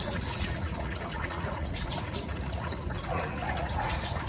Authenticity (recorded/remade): remade